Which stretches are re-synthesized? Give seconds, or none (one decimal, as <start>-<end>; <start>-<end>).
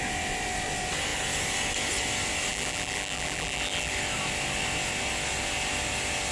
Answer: 2.5-3.9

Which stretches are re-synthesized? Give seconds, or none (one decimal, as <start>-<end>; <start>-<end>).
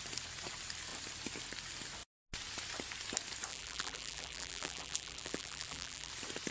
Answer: 3.5-6.1